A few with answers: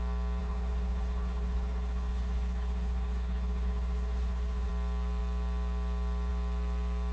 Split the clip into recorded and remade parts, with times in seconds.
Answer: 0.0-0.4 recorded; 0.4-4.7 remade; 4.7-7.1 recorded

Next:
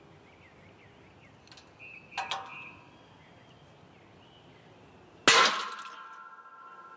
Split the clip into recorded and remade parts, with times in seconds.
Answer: 0.0-7.0 recorded